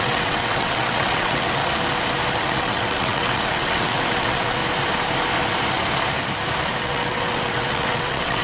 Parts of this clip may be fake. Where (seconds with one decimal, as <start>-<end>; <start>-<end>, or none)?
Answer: 0.0-1.6; 2.4-4.6; 6.8-8.4